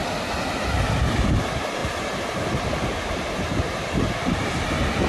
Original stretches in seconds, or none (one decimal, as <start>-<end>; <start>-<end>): 0.0-5.1